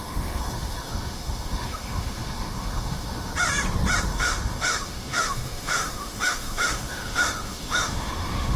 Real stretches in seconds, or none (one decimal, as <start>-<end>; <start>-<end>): 3.3-4.1